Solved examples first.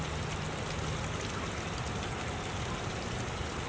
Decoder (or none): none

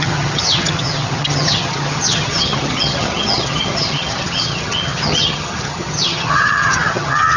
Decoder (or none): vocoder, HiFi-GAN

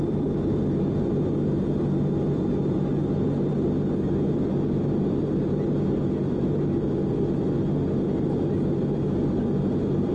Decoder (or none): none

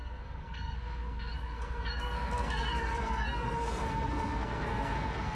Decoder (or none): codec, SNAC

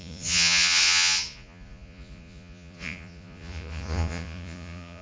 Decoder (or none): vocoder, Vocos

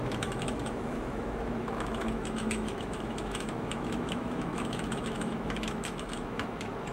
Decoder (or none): autoencoder, DAC-VAE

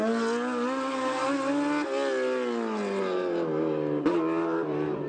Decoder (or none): none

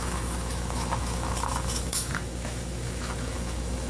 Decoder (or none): autoencoder, DAC-VAE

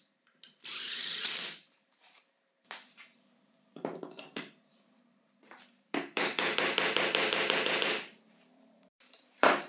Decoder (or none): vocoder, BigVGAN v2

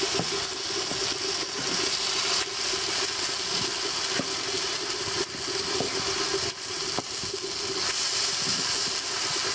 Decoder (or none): none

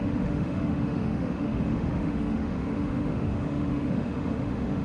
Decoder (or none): autoencoder, DAC-VAE